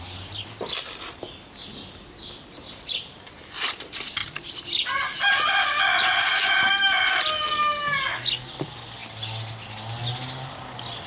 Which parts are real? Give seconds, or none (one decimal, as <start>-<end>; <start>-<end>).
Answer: 0.0-4.2; 5.8-11.1